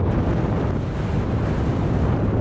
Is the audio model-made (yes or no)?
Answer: no